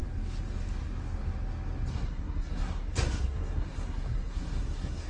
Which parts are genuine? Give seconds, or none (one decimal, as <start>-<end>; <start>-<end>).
0.0-1.9